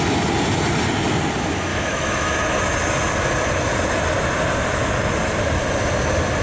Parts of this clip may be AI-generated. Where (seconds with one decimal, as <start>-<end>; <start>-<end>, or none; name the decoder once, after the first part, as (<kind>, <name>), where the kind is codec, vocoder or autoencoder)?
1.7-2.3 (autoencoder, DAC-VAE)